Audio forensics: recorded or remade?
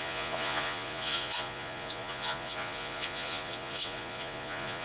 remade